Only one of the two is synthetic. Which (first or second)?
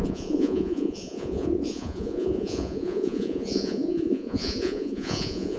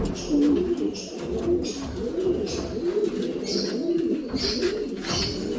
first